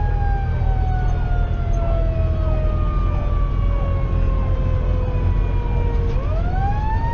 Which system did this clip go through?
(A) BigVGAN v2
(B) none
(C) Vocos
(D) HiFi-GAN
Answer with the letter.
B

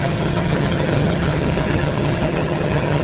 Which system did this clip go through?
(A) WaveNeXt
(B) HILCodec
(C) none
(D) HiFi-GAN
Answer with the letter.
D